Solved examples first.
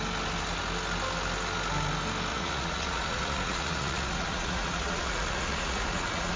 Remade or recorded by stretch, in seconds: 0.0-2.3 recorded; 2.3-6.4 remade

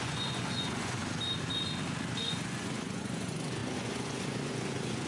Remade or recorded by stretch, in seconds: 0.0-1.0 remade; 1.0-2.2 recorded; 2.2-5.1 remade